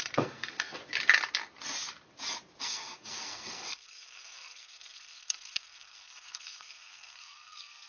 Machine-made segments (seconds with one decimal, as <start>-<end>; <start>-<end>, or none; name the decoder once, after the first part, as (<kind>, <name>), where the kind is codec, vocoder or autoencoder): 0.0-0.8 (codec, SNAC); 2.6-7.9